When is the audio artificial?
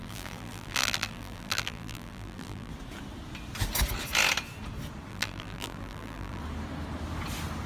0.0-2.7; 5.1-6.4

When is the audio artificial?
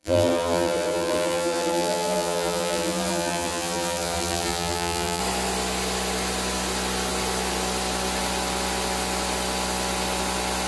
0.0-5.2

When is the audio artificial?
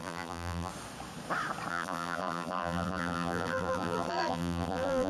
0.0-0.7; 1.7-5.1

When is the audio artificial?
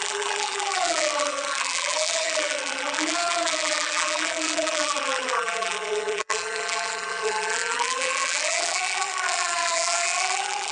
0.0-10.7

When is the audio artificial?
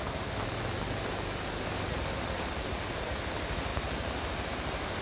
3.7-4.5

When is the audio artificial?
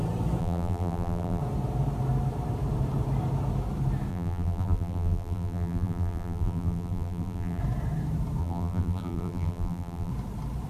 0.4-1.4; 4.1-7.6; 8.4-10.1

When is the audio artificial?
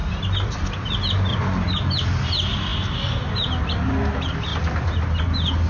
0.0-0.9; 1.3-2.3; 2.7-3.6